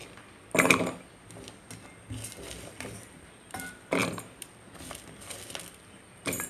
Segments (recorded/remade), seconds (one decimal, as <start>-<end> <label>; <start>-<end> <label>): 0.0-2.7 recorded; 2.7-4.0 remade; 4.0-5.8 recorded; 5.8-6.5 remade